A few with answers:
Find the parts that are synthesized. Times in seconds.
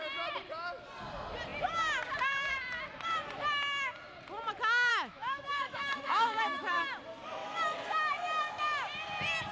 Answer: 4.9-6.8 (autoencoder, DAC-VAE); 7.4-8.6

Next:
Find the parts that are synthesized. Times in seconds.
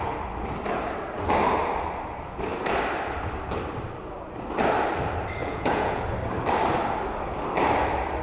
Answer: 5.4-6.0 (vocoder, Vocos)